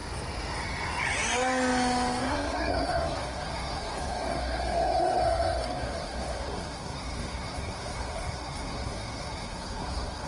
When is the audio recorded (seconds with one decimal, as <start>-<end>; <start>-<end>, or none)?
0.0-2.2